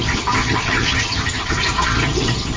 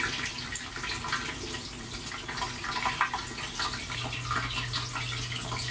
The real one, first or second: second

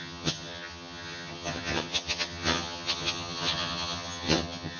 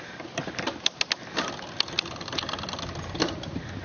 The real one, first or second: second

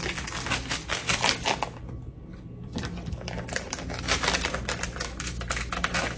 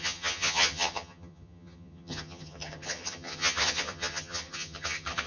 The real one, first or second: first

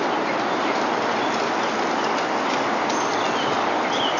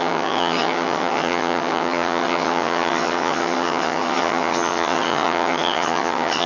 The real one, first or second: first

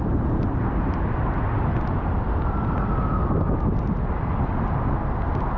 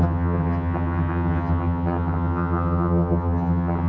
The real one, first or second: first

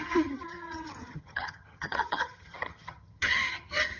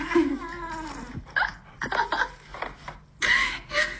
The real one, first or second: second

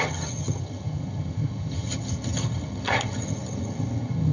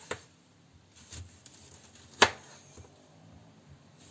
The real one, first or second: second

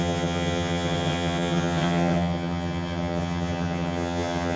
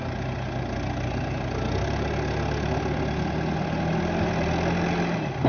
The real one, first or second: second